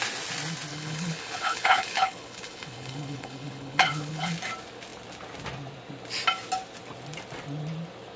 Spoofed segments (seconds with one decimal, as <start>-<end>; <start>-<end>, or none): 0.7-4.3